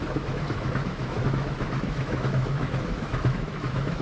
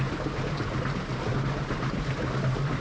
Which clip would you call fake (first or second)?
first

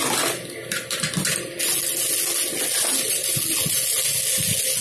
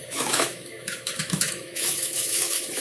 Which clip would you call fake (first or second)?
second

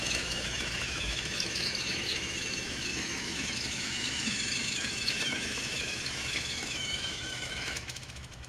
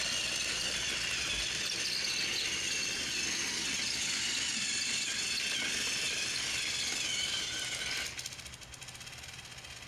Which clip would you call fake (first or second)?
first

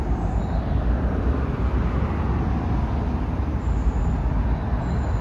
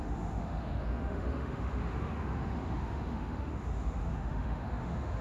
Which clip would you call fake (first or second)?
second